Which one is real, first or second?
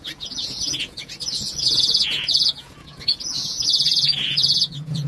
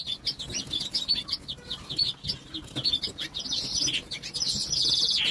second